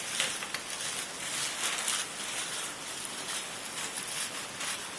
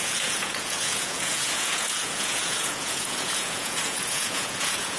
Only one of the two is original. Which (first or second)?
first